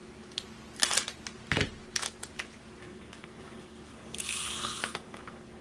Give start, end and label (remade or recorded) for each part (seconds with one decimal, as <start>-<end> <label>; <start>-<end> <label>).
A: 0.0-2.8 recorded; 2.8-5.6 remade